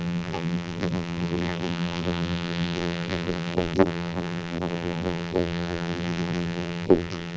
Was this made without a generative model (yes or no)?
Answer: no